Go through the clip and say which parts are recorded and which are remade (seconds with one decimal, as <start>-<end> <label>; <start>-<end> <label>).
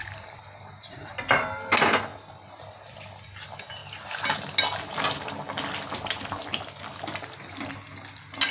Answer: 0.0-1.1 remade; 1.1-8.5 recorded